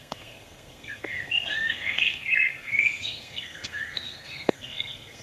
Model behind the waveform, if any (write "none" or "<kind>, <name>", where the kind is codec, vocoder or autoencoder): codec, SNAC